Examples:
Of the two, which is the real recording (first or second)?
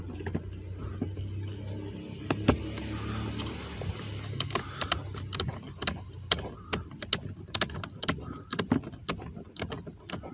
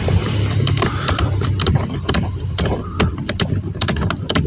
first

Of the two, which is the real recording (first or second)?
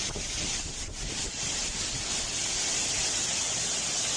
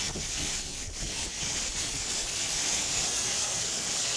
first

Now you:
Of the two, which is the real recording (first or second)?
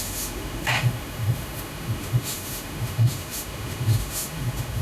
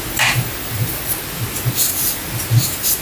second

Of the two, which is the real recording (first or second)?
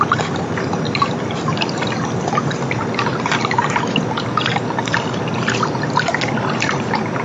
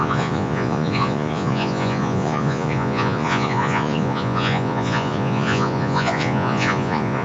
first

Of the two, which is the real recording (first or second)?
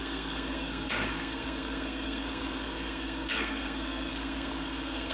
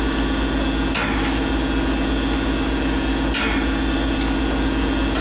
second